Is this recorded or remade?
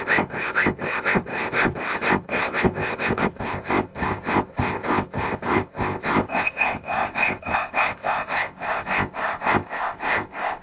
remade